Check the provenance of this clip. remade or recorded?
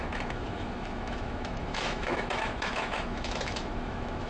remade